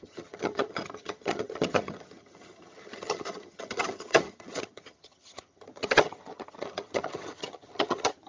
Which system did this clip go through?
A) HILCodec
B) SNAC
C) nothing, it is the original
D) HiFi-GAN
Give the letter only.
D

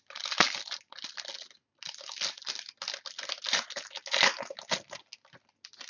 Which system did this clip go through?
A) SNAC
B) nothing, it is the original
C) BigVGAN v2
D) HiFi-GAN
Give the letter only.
B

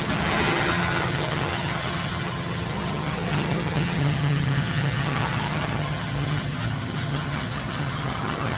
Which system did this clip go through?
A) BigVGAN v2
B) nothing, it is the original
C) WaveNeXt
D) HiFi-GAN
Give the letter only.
D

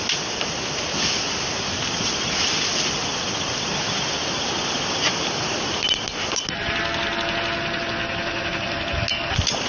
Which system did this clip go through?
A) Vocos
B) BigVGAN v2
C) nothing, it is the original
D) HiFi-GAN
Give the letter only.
C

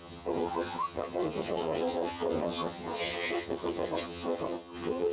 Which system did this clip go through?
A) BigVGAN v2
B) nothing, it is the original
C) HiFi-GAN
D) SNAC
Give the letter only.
C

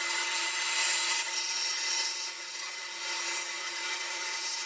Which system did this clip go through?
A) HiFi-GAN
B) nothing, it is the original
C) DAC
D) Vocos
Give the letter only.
A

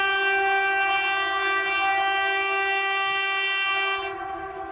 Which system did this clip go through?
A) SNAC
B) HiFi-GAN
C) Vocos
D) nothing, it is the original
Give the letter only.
D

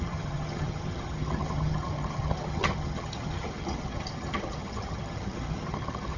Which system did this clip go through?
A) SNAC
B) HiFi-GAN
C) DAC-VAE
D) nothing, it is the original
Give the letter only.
B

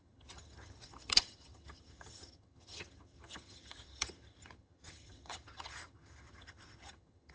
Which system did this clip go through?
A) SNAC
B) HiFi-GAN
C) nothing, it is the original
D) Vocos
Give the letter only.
B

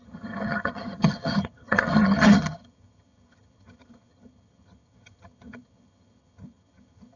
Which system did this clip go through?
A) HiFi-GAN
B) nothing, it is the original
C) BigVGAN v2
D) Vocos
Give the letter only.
A